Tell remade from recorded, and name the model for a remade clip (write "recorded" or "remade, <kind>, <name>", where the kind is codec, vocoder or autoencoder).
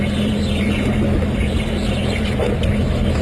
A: recorded